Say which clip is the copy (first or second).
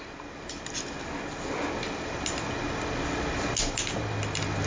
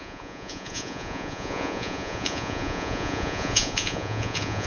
second